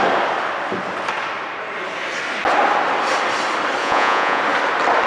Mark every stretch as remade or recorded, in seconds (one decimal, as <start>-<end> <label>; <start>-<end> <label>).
0.0-3.8 recorded; 3.8-4.4 remade; 4.4-5.1 recorded